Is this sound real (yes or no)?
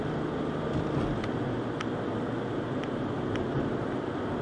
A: yes